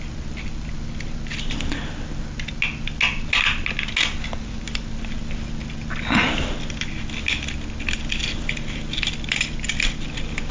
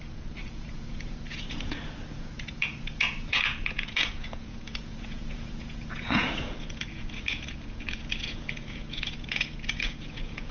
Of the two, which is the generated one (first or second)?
second